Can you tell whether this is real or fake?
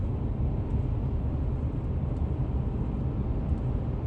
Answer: real